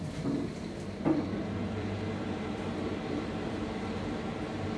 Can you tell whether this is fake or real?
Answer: fake